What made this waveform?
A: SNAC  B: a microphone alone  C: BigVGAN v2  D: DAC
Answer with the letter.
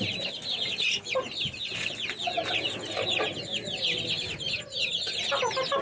B